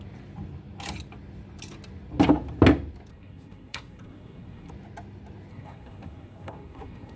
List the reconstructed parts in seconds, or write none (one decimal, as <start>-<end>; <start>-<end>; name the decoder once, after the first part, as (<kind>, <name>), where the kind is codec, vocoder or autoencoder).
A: 3.1-4.7 (codec, SNAC); 5.5-7.2